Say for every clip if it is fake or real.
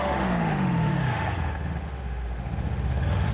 fake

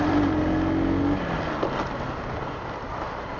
real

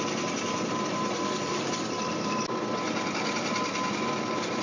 fake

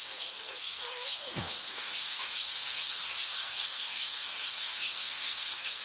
fake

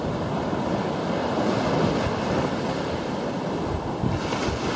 real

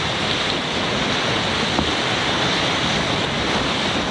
real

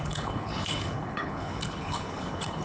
fake